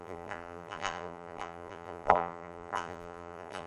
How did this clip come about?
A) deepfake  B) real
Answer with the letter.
A